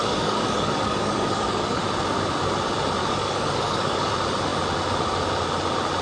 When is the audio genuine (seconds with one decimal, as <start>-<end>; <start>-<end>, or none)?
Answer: 1.8-3.0; 4.1-6.0